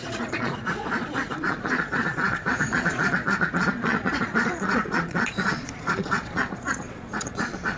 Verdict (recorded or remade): remade